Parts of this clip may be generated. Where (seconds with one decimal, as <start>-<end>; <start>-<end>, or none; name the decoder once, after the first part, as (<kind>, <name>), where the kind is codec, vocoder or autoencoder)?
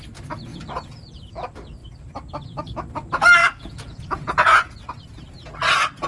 0.5-1.3 (vocoder, Vocos); 3.4-4.9